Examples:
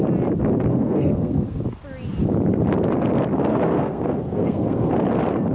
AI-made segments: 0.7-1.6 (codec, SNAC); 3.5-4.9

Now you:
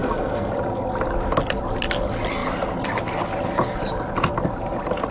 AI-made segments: 0.0-0.5 (codec, SNAC)

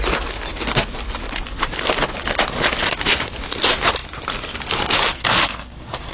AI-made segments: 5.1-6.1 (codec, SNAC)

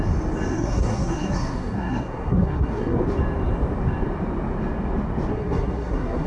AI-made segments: 0.5-3.0 (codec, SNAC); 5.3-6.3